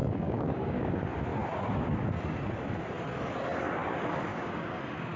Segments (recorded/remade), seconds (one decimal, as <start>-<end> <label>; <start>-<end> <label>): 0.0-0.9 remade; 0.9-4.3 recorded; 4.3-4.8 remade; 4.8-5.2 recorded